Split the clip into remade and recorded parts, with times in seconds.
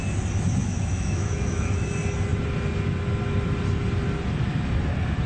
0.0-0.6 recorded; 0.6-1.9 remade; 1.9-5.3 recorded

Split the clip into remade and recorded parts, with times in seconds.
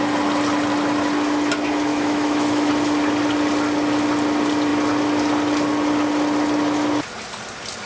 0.0-1.9 recorded; 1.9-2.7 remade; 2.7-7.9 recorded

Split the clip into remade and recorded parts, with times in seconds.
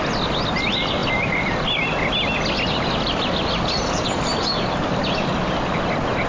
0.0-6.3 recorded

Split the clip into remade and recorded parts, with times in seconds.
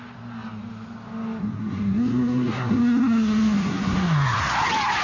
0.0-1.4 recorded; 1.4-4.4 remade; 4.4-5.0 recorded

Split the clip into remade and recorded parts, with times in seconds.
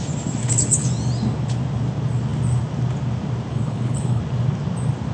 0.0-0.4 recorded; 0.4-0.9 remade; 0.9-3.5 recorded; 3.5-4.2 remade; 4.2-5.1 recorded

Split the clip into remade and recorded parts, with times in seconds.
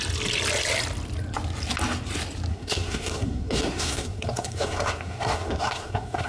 0.0-2.5 recorded; 2.5-6.3 remade